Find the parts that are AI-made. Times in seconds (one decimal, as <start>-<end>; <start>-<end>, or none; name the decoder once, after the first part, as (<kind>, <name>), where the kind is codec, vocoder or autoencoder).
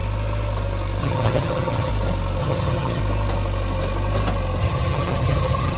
1.0-1.9 (vocoder, HiFi-GAN); 2.4-3.0; 4.6-5.8